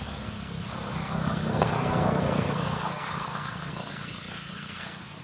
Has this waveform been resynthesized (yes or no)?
yes